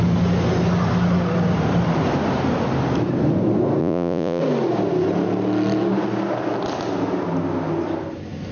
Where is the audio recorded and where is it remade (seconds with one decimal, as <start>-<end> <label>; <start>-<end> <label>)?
0.0-3.8 recorded; 3.8-4.4 remade; 4.4-8.5 recorded